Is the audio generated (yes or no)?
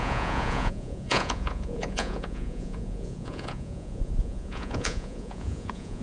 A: yes